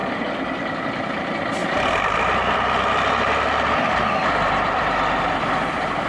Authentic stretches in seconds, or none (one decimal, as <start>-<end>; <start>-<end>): 0.8-1.6; 5.3-6.1